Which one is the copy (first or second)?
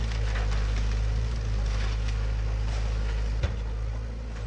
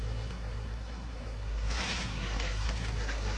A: second